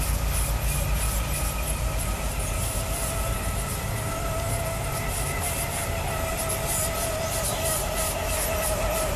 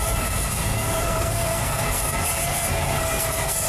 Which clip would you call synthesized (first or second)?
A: second